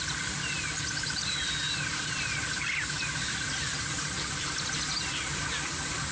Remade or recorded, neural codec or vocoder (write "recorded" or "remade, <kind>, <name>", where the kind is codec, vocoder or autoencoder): recorded